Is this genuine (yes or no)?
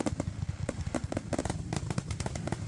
no